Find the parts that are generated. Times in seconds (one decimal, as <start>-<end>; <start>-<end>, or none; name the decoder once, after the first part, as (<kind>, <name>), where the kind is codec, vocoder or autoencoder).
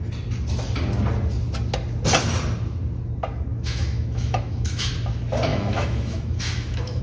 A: 3.5-4.9 (autoencoder, DAC-VAE); 5.5-7.0